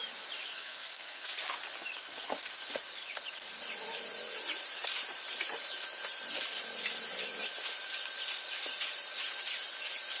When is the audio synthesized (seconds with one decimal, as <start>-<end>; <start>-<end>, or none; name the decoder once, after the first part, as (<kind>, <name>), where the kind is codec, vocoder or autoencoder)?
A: 0.5-1.3 (codec, SNAC)